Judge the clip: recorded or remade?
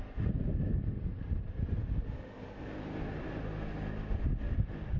recorded